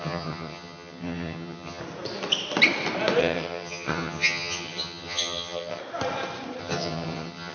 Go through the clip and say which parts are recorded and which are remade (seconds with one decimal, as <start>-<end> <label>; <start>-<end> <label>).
0.0-1.8 remade; 1.8-3.2 recorded; 3.2-5.8 remade; 5.8-6.6 recorded; 6.6-7.5 remade